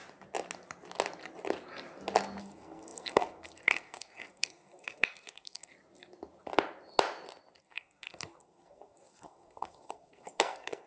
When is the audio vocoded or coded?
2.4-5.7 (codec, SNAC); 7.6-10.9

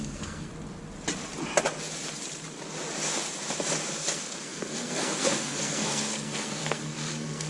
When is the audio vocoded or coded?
0.0-0.5 (codec, SNAC); 3.9-7.5

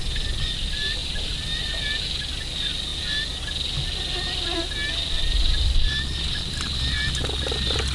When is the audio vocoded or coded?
none

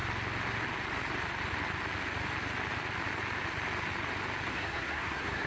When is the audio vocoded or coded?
4.5-5.5 (codec, SNAC)

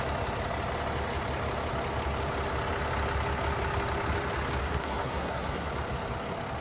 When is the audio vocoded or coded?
4.6-5.7 (codec, SNAC)